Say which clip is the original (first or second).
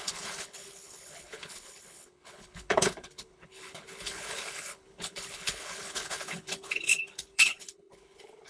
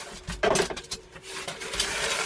second